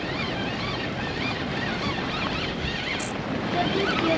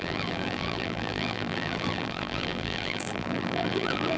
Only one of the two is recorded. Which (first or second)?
first